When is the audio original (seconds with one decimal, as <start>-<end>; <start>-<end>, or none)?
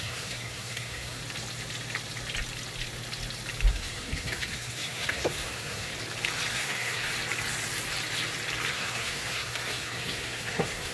1.2-3.7; 5.9-6.5; 7.1-8.7